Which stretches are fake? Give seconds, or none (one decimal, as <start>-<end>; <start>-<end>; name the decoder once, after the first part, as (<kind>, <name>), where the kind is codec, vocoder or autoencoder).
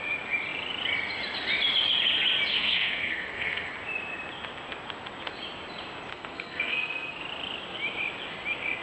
2.5-3.7 (codec, SNAC); 6.1-7.2